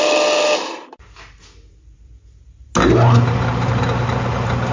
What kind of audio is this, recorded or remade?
recorded